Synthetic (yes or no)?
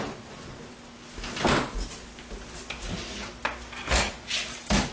no